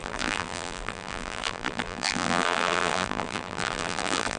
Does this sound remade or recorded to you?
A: remade